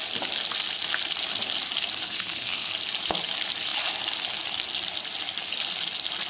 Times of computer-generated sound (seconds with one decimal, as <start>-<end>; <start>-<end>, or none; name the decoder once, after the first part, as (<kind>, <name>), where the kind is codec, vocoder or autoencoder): 2.0-2.7 (codec, SNAC)